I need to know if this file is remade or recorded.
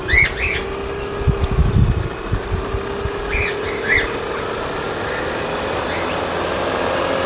recorded